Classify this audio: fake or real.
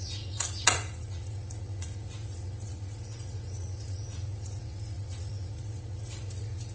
fake